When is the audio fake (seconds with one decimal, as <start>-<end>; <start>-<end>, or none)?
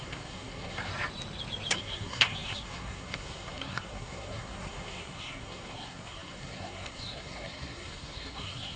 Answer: 0.0-0.9; 1.7-8.8